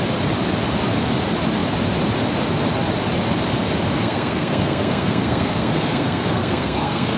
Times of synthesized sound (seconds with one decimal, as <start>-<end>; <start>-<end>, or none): 4.0-7.2